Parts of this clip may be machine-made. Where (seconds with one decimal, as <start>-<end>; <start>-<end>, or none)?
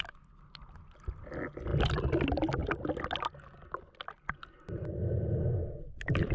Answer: none